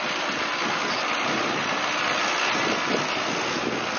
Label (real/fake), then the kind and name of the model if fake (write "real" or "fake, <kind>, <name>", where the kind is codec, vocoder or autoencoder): real